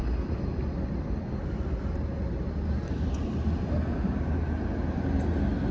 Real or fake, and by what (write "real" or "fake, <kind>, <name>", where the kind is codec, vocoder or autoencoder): real